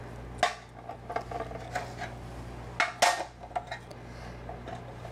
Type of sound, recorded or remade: recorded